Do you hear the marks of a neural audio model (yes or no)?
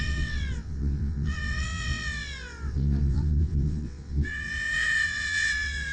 yes